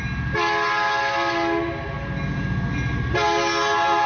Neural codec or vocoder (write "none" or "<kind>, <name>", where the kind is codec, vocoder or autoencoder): none